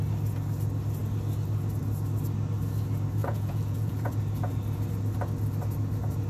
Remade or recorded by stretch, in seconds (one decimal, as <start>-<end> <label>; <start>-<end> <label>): 0.0-3.2 recorded; 3.2-4.1 remade; 4.1-6.3 recorded